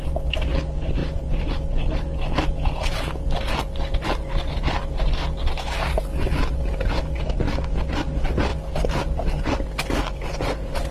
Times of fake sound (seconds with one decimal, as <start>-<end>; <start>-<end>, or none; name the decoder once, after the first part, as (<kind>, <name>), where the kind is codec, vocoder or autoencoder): 1.0-3.1 (vocoder, BigVGAN v2)